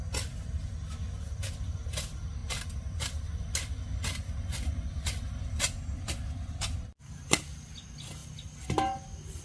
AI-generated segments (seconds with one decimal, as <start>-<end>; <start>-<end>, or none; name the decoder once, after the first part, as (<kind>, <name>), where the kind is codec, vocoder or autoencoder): none